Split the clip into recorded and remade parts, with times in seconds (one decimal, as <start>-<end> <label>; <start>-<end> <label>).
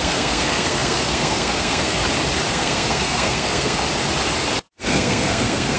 0.0-2.0 remade; 2.0-2.5 recorded; 2.5-3.8 remade; 3.8-4.6 recorded; 4.6-5.8 remade